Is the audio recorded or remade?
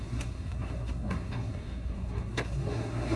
remade